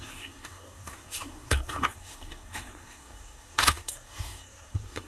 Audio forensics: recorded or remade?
remade